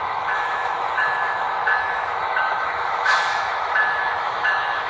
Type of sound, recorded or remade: remade